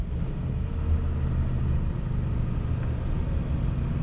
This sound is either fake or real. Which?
real